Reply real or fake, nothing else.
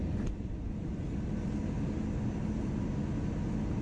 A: real